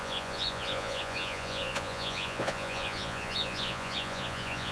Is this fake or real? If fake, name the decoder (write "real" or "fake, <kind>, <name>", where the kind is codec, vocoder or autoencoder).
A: fake, vocoder, Vocos